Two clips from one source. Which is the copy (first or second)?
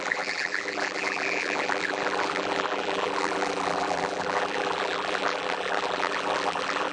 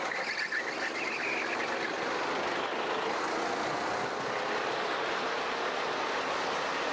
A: first